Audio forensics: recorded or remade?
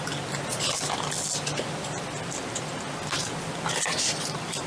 recorded